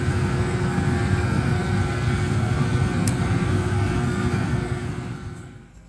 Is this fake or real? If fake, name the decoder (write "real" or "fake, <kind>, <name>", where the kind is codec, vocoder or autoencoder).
fake, codec, SNAC